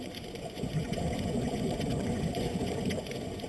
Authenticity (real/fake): fake